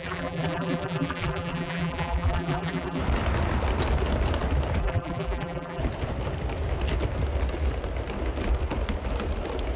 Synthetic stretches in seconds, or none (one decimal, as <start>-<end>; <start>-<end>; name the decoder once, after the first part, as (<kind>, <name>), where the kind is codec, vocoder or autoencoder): 0.0-3.0 (vocoder, BigVGAN v2); 4.8-5.8